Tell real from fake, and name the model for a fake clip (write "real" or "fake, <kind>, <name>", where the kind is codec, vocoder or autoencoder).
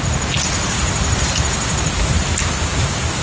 real